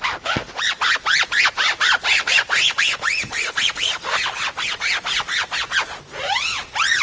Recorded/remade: recorded